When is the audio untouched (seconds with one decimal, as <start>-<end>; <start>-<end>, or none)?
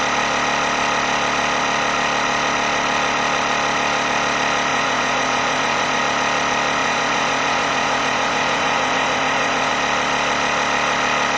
0.0-4.7; 6.0-6.8; 9.7-11.4